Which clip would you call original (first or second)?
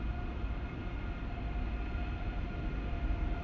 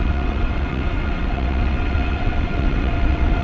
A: first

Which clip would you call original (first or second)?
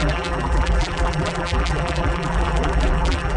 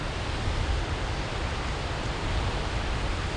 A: second